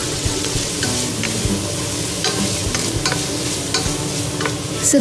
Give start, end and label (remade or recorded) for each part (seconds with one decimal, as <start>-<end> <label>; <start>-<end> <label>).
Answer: 0.0-0.7 remade; 0.7-5.0 recorded